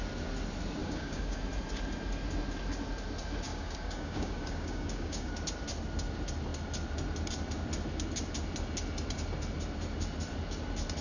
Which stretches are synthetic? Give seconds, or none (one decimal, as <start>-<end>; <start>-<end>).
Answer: 0.8-1.4; 3.5-5.3